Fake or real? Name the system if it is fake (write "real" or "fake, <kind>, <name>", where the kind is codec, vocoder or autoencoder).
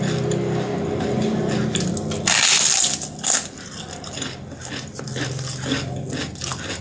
real